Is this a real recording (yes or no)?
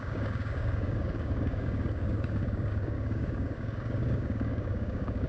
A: no